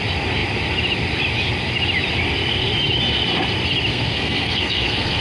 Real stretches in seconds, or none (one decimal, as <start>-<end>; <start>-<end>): 0.0-3.9